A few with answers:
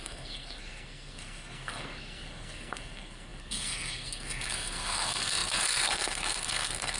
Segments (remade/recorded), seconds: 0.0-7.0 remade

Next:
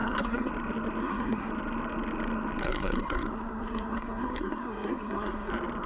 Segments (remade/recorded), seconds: 0.0-0.5 remade; 0.5-1.0 recorded; 1.0-1.5 remade; 1.5-2.6 recorded; 2.6-5.5 remade; 5.5-5.9 recorded

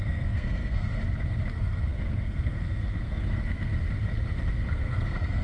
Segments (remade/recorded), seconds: 0.0-0.9 remade; 0.9-1.5 recorded; 1.5-3.7 remade; 3.7-4.7 recorded; 4.7-5.4 remade

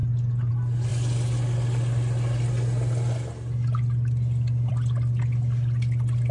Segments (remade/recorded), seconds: 0.0-6.3 recorded

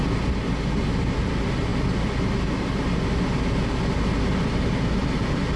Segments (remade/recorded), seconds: 0.0-5.6 recorded